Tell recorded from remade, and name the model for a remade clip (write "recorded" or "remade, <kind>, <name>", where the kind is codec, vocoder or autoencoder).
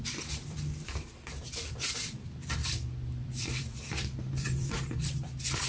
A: remade, vocoder, BigVGAN v2